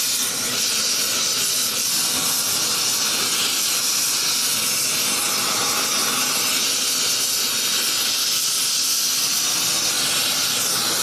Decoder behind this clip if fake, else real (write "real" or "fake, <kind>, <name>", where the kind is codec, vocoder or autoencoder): real